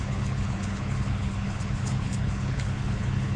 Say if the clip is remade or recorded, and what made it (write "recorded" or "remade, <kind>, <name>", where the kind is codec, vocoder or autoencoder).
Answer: remade, codec, HILCodec